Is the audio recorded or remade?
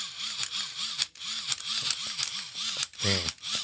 recorded